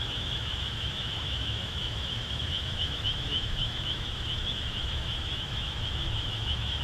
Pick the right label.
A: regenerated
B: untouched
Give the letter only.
A